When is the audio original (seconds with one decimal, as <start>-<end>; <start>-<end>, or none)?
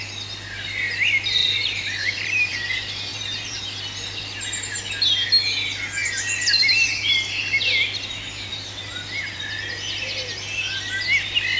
0.0-1.4; 2.5-3.1; 3.8-8.5; 9.4-11.6